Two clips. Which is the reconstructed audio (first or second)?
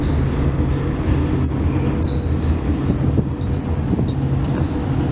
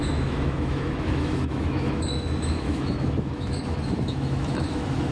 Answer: second